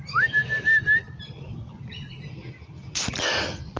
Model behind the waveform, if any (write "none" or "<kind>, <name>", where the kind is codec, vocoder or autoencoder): none